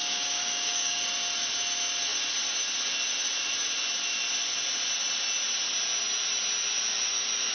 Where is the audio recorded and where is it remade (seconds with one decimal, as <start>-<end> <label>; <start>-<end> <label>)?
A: 0.0-1.0 remade; 1.0-7.5 recorded